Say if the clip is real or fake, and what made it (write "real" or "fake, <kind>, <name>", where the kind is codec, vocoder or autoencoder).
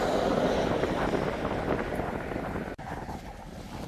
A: real